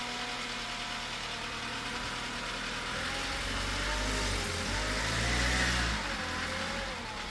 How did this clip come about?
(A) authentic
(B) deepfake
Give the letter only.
A